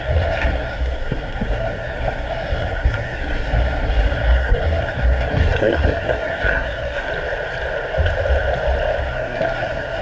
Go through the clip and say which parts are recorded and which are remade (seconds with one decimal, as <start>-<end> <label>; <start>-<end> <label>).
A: 0.0-7.1 remade; 7.1-9.0 recorded; 9.0-10.0 remade